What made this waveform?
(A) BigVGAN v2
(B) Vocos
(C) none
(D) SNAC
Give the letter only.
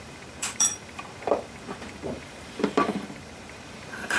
A